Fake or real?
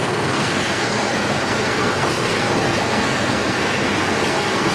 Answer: fake